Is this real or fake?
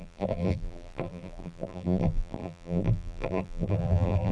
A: fake